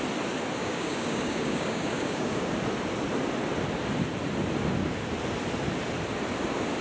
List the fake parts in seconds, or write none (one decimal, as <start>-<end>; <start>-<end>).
0.6-2.5